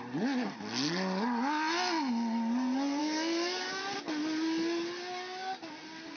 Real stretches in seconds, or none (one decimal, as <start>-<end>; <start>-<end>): 0.0-3.0; 3.8-6.2